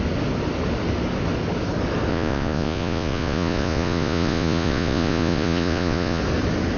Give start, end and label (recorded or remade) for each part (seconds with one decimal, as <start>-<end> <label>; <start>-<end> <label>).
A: 0.0-2.1 recorded; 2.1-6.2 remade; 6.2-6.8 recorded